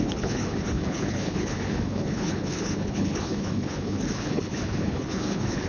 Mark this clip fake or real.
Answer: fake